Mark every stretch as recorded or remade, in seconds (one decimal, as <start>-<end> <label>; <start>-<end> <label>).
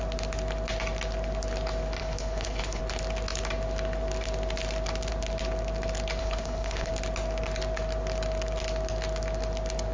0.0-2.0 recorded; 2.0-2.8 remade; 2.8-6.2 recorded; 6.2-6.9 remade; 6.9-9.9 recorded